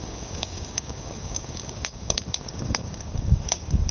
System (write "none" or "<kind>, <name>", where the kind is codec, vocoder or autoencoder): codec, DAC